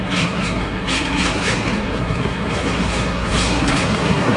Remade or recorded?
remade